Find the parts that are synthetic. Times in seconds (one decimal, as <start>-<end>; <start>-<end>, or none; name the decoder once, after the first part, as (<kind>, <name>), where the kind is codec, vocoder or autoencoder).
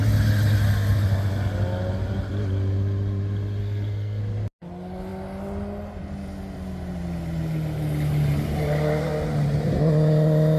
3.6-4.2 (codec, SNAC)